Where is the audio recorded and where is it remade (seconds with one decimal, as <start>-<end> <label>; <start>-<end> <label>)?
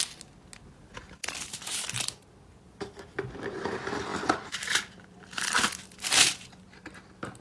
0.0-1.2 recorded; 1.2-2.3 remade; 2.3-4.1 recorded; 4.1-6.6 remade; 6.6-7.4 recorded